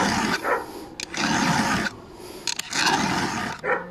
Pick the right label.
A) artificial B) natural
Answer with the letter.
B